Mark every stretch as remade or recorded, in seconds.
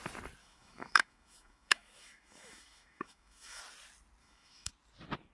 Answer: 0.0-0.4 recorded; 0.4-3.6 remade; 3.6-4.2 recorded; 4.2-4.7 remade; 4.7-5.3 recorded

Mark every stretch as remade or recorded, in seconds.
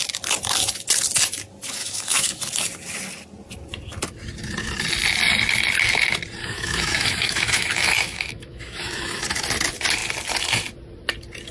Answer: 0.0-1.8 recorded; 1.8-2.4 remade; 2.4-6.4 recorded; 6.4-9.2 remade; 9.2-11.5 recorded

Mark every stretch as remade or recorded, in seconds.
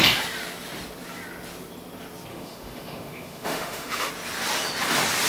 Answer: 0.0-2.3 recorded; 2.3-4.1 remade; 4.1-5.3 recorded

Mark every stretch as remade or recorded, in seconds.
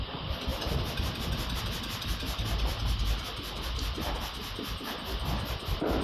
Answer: 0.0-6.0 recorded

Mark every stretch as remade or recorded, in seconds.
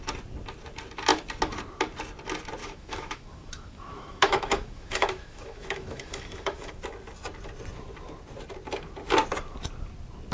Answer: 0.0-2.6 recorded; 2.6-6.7 remade; 6.7-10.3 recorded